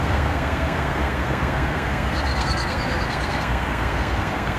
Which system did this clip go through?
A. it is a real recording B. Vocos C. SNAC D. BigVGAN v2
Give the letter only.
C